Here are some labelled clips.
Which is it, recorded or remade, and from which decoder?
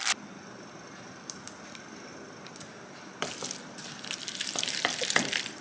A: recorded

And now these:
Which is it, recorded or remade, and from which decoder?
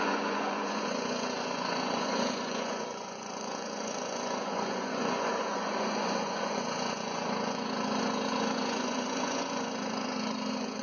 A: remade, vocoder, Vocos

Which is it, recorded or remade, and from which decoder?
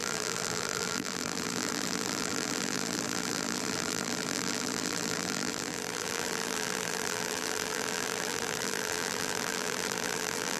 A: remade, vocoder, BigVGAN v2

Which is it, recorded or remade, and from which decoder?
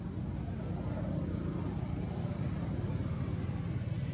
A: recorded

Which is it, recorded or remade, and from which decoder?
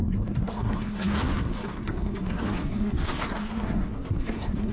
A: remade, codec, SNAC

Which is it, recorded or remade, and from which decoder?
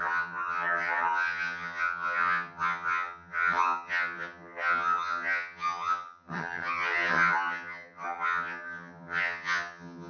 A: remade, vocoder, HiFi-GAN